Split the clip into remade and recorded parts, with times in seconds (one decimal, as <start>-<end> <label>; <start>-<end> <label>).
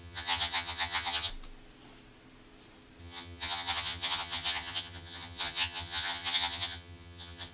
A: 0.0-1.3 remade; 1.3-3.0 recorded; 3.0-7.5 remade